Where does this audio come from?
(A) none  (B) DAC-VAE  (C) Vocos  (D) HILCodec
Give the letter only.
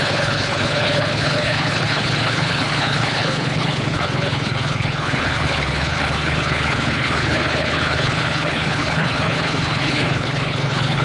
D